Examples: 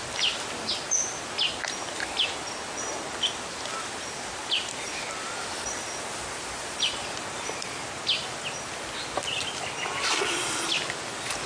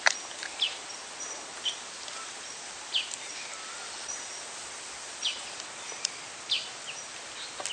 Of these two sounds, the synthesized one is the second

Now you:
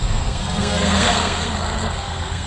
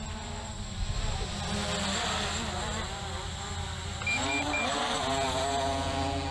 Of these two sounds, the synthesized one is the first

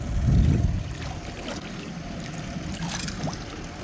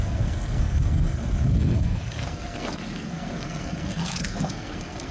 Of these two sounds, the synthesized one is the second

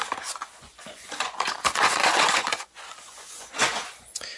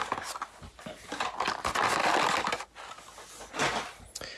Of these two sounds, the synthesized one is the first